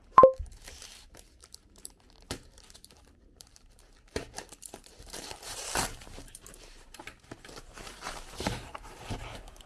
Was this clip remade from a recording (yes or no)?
yes